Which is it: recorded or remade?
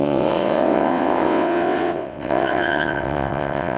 remade